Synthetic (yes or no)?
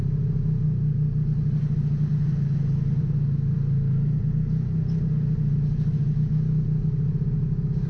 no